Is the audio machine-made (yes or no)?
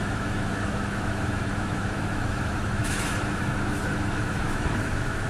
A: yes